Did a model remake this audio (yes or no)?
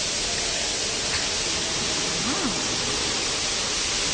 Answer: no